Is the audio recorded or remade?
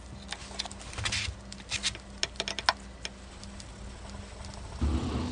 recorded